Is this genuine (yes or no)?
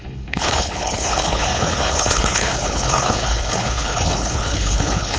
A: no